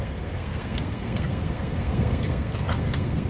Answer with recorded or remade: remade